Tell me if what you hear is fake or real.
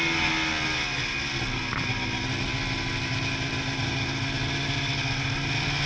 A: real